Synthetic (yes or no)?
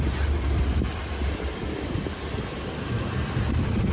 no